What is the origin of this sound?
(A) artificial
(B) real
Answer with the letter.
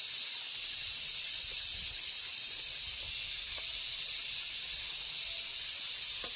B